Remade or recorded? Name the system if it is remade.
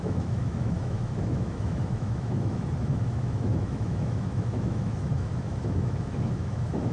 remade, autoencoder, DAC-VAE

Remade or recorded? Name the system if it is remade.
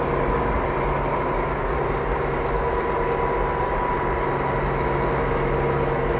recorded